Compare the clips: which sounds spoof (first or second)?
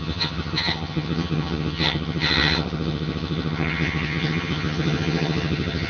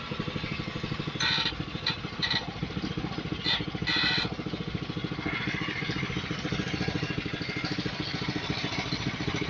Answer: first